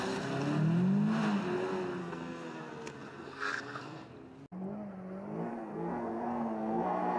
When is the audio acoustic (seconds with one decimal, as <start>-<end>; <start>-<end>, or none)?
0.0-2.0; 4.1-5.5